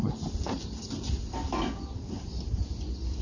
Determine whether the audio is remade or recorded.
recorded